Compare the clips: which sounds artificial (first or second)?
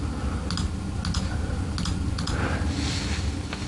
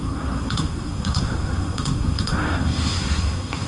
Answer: second